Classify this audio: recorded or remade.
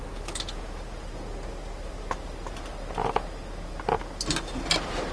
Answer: recorded